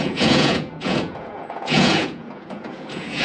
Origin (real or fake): fake